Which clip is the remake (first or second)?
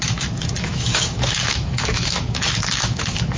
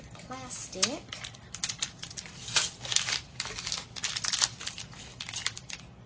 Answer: first